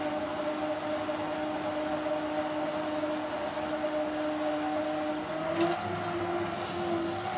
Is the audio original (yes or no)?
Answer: yes